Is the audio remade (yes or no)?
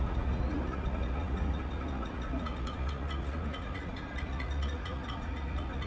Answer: yes